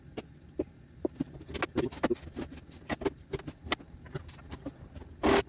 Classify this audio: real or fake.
real